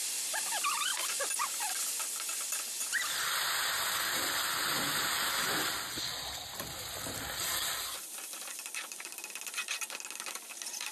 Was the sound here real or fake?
real